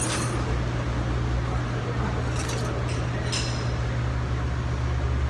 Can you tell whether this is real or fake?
real